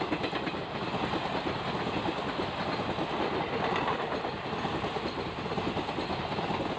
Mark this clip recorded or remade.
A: recorded